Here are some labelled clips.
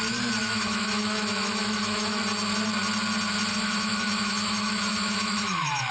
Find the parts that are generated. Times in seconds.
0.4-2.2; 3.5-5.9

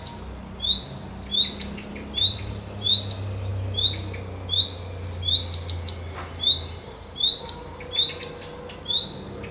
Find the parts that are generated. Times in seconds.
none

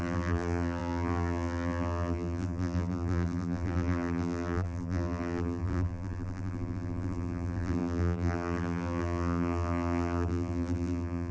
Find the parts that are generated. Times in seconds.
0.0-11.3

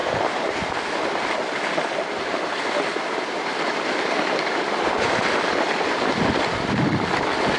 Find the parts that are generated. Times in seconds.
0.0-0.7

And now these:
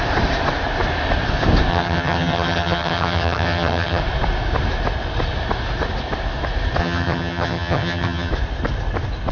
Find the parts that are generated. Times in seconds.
1.7-4.0; 6.8-8.3

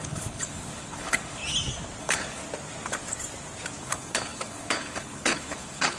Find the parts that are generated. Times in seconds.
0.0-1.4; 2.0-2.4; 3.8-6.0

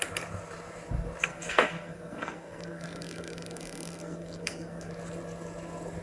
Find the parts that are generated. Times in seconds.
1.3-4.9

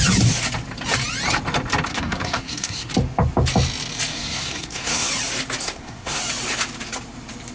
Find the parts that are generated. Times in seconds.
1.9-2.9; 4.1-5.1; 5.6-6.2